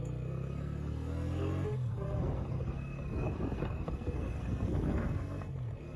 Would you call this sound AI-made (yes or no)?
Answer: yes